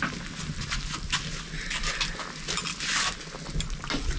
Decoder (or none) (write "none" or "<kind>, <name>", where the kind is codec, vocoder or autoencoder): none